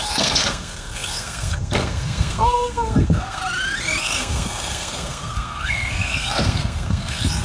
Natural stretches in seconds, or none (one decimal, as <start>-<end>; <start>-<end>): 3.4-4.0